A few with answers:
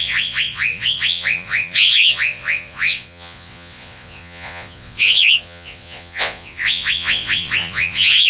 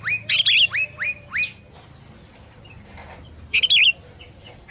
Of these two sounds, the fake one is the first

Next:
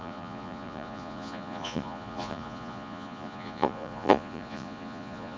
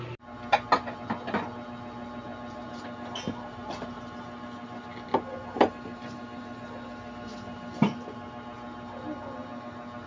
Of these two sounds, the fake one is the first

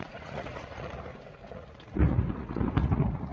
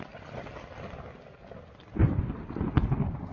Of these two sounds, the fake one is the first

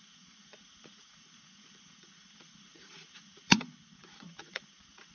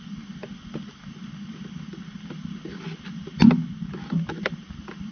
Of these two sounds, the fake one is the first